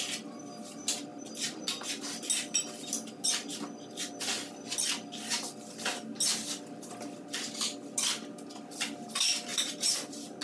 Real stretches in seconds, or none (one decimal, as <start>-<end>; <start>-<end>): 0.0-9.5